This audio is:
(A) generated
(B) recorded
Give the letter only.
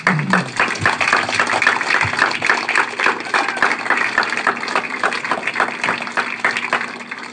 B